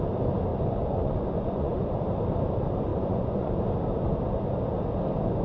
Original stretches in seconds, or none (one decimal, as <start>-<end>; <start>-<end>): 0.0-0.5; 1.8-2.9; 3.5-5.4